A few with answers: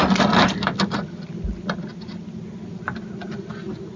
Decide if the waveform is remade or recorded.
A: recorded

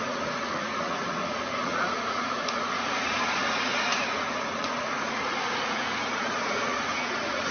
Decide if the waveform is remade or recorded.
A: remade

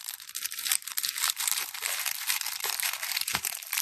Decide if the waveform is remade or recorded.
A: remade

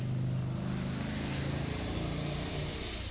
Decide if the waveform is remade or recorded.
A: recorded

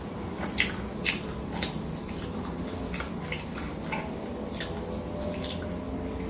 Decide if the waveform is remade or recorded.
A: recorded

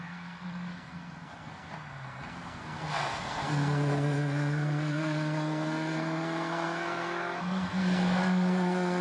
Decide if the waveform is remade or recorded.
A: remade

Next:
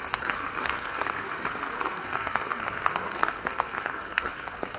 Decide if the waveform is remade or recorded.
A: remade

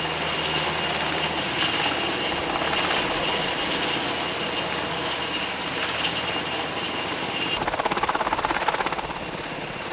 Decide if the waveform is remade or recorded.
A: recorded